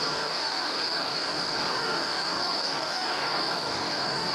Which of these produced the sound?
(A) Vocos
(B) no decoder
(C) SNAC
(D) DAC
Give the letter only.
D